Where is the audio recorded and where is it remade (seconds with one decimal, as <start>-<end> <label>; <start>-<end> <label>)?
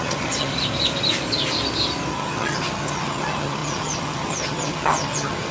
0.0-0.5 remade; 0.5-2.1 recorded; 2.1-5.5 remade